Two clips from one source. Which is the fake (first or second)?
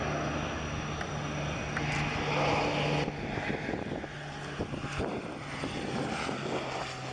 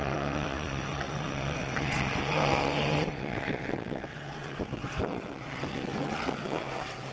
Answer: second